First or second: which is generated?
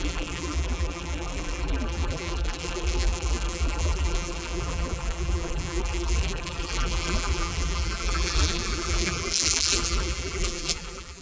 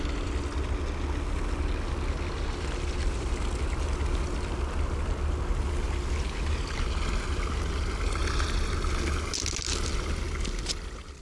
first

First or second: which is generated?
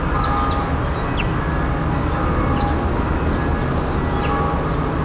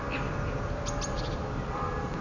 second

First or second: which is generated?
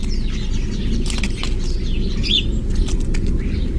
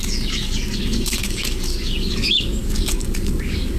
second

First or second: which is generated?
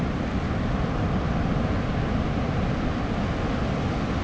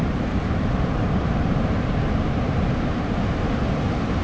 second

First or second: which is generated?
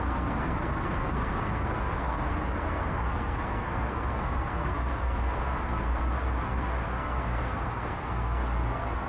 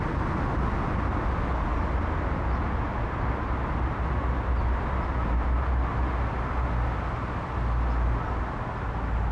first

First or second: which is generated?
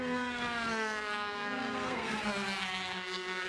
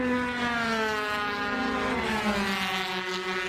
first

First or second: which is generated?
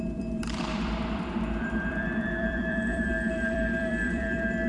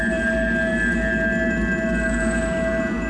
first